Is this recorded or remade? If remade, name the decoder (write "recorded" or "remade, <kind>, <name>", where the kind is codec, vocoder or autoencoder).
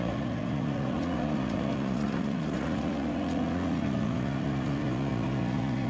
remade, vocoder, Vocos